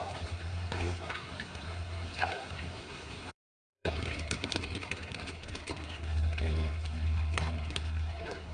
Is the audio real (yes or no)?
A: no